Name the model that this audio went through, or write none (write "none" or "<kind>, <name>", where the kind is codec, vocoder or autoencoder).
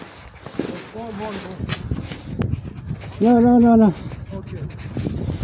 none